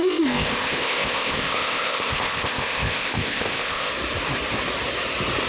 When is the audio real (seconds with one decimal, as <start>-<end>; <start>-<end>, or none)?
3.9-5.5